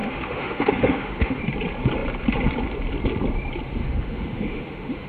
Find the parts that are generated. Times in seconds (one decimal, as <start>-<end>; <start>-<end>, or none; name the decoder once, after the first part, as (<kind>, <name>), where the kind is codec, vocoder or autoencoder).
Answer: 0.0-1.4 (autoencoder, DAC-VAE); 3.8-5.1

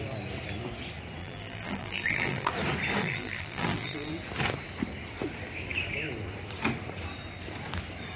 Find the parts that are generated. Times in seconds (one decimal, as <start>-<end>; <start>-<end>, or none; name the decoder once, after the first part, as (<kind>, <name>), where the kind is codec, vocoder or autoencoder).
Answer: 1.2-2.5 (vocoder, BigVGAN v2); 3.0-4.1

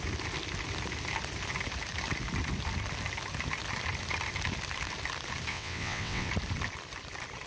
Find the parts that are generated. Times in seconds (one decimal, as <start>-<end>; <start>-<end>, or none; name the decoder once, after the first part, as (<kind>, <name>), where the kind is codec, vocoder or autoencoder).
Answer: 5.5-6.3 (vocoder, WaveNeXt)

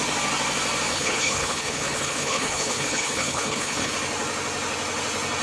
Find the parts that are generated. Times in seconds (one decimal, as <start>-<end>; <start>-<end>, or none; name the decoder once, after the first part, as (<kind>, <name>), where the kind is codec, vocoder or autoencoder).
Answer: 0.9-3.9 (codec, HILCodec)

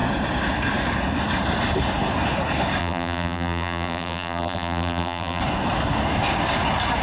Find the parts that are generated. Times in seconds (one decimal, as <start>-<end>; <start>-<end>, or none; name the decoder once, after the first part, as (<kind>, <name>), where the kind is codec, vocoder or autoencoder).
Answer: 2.8-5.4 (vocoder, BigVGAN v2)

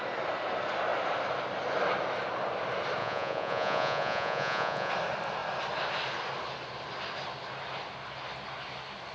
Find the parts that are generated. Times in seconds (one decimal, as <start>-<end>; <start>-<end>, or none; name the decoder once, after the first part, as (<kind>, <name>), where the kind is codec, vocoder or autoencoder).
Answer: 3.0-4.9 (vocoder, Vocos)

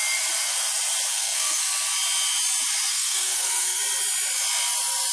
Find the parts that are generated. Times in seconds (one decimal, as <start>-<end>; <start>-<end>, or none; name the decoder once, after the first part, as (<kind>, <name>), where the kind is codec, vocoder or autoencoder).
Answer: 1.1-1.6 (codec, SNAC); 2.9-3.8

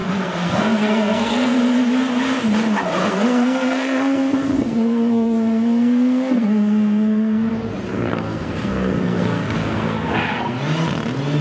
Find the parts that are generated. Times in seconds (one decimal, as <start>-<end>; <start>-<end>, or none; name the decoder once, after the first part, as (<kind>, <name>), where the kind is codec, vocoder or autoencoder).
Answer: 0.0-1.6 (codec, SNAC); 3.0-7.5; 7.9-10.6